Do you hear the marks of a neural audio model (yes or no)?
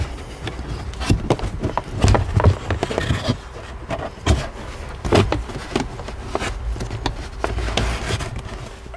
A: no